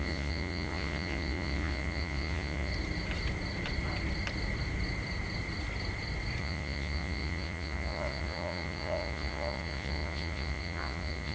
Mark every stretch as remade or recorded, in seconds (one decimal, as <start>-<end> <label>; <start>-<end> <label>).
0.0-2.7 remade; 2.7-6.4 recorded; 6.4-11.3 remade